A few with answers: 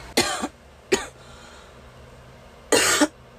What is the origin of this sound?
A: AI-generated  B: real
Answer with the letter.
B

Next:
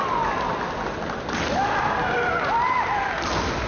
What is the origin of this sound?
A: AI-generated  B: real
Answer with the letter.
B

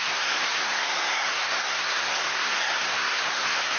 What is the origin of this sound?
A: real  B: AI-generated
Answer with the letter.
B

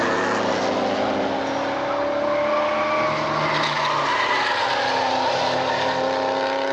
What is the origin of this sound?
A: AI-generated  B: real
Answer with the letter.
B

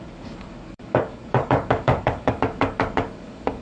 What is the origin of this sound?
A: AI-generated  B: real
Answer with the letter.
A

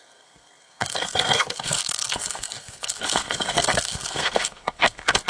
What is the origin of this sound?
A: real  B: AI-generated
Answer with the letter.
B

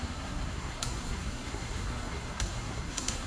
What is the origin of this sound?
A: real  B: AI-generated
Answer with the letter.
B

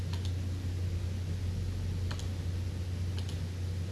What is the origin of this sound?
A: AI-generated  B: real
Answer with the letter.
B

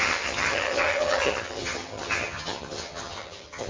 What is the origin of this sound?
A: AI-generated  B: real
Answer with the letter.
A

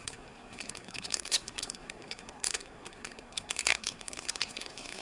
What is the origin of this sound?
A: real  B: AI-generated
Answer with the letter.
B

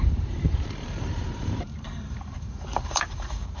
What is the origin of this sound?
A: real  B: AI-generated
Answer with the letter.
B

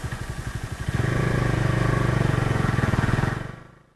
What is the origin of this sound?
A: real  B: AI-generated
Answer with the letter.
B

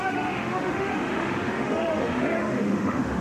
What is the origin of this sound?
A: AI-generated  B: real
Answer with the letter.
A